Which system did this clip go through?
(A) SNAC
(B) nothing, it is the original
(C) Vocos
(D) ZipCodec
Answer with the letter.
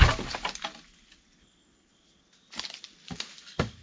B